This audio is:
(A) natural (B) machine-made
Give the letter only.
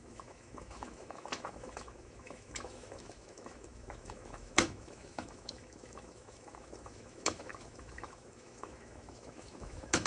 B